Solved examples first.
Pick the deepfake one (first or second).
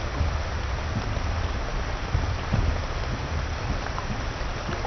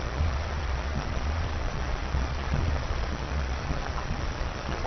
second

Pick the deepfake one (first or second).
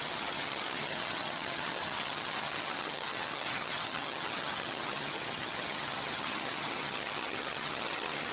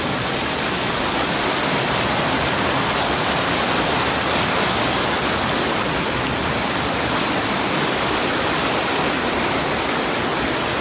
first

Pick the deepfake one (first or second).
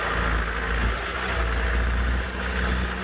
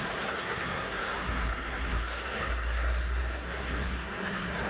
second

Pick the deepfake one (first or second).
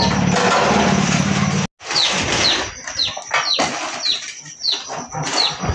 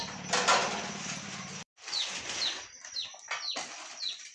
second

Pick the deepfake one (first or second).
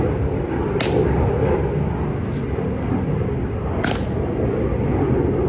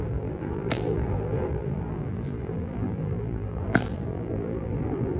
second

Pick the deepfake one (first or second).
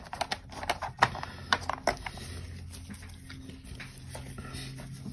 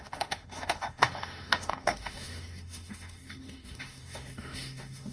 second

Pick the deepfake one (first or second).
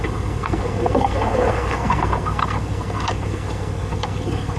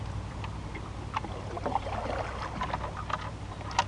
first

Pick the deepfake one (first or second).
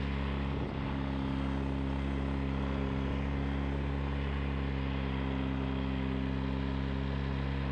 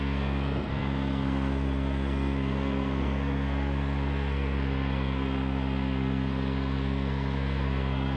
second